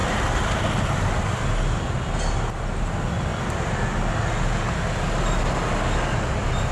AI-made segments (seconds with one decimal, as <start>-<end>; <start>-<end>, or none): none